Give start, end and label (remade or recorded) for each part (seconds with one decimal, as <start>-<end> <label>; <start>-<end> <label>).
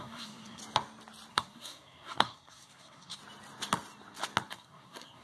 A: 0.0-0.6 remade; 0.6-1.3 recorded; 1.3-3.2 remade; 3.2-4.5 recorded; 4.5-5.2 remade